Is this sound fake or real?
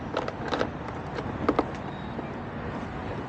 real